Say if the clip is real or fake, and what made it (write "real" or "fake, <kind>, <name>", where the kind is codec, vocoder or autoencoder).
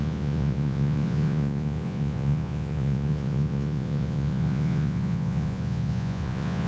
fake, vocoder, Vocos